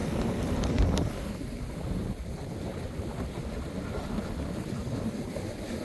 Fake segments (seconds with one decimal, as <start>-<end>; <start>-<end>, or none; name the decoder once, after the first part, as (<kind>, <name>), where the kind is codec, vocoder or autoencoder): 0.0-1.1 (vocoder, BigVGAN v2); 4.8-5.8